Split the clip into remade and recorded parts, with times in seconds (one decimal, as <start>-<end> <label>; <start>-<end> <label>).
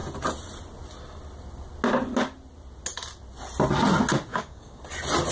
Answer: 0.0-4.3 recorded; 4.3-4.8 remade; 4.8-5.3 recorded